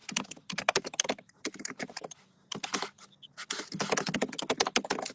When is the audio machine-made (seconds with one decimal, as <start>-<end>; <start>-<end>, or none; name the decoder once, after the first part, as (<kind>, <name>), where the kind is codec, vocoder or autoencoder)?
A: 0.0-3.0 (vocoder, BigVGAN v2)